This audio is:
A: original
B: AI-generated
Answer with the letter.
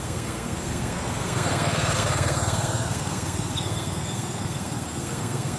B